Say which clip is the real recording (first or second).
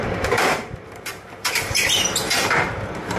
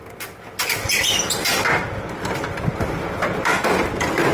second